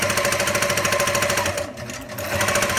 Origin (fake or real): real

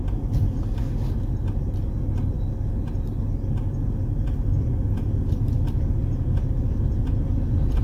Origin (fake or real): real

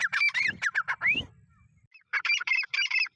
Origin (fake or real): fake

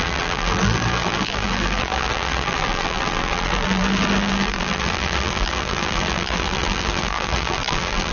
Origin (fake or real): fake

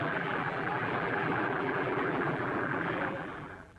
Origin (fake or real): fake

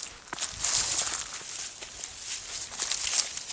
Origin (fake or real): real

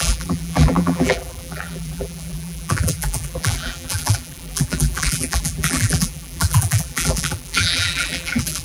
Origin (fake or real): fake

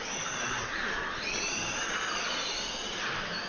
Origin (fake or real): real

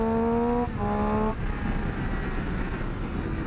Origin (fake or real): real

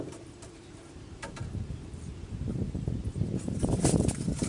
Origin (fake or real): fake